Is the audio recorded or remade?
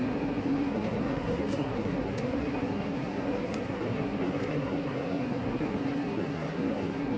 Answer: remade